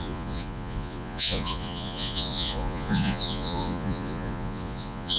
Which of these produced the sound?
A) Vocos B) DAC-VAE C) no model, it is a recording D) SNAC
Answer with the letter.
A